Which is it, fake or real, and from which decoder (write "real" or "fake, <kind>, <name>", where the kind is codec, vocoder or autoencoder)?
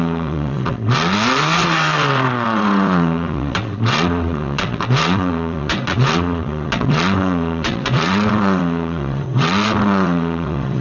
fake, vocoder, WaveNeXt